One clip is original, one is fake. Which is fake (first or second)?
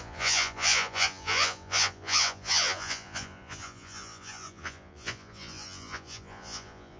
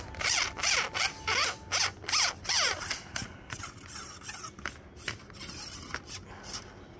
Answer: first